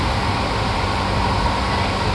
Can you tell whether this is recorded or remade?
recorded